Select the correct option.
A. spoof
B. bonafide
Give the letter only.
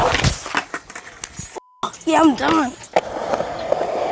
B